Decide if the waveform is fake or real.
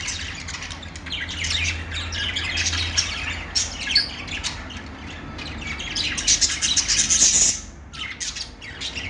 real